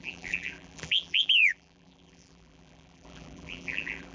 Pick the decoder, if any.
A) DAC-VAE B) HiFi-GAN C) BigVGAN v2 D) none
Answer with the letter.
C